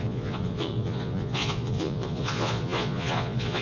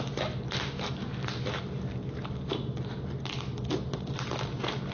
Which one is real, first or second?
second